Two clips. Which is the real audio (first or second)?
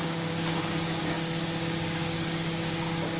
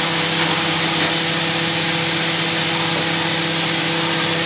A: second